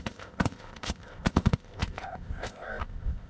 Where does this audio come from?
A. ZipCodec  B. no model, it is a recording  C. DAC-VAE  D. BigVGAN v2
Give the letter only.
A